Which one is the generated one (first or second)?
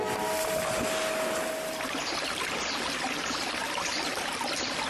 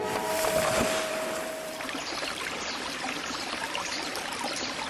second